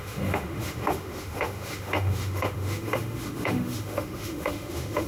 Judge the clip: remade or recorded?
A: remade